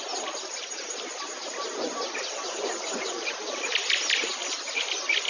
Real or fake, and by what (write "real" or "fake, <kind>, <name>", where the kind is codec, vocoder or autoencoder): real